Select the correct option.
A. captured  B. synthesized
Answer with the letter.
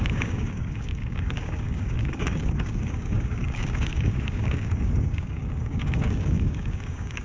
B